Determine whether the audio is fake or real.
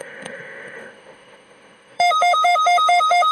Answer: fake